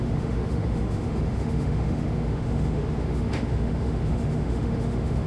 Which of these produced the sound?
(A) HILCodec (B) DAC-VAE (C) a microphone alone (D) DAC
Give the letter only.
B